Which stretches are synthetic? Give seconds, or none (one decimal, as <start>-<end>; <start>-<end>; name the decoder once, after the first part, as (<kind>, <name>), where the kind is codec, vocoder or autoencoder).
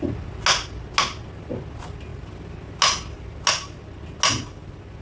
none